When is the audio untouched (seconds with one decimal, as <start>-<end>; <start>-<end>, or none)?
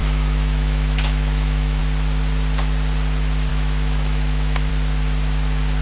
1.8-3.5; 4.7-5.8